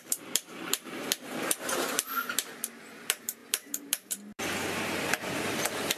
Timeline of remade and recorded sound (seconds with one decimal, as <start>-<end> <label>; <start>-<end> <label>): 0.0-6.0 remade